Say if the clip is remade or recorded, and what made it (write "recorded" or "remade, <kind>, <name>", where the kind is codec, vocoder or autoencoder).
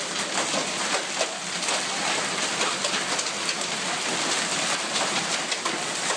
recorded